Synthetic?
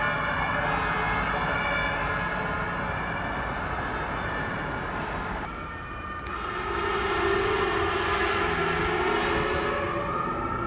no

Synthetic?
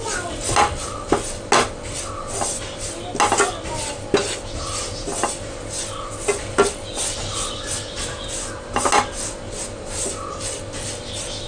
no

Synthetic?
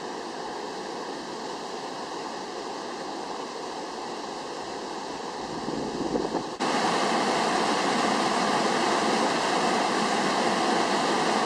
no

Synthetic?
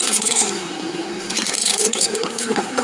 yes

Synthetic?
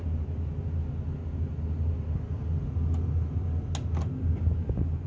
no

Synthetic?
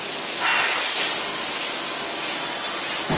no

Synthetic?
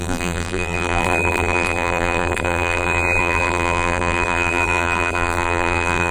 yes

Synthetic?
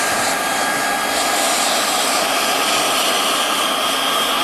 no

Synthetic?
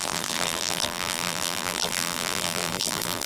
yes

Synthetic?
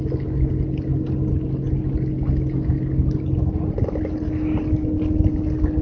no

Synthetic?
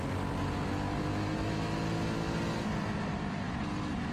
no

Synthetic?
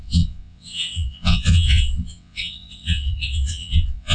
yes